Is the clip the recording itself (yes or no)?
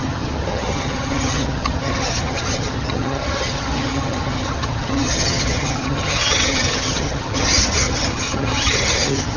no